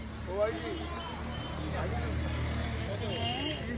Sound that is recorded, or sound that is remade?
recorded